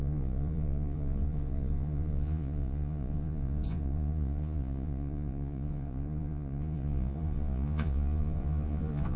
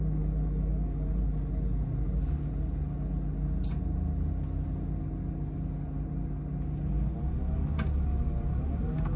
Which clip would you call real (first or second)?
second